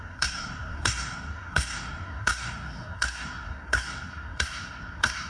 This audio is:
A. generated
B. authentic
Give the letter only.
A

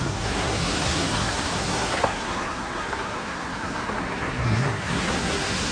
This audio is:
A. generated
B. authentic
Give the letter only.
A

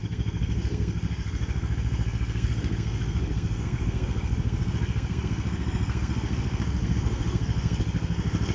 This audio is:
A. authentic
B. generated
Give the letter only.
B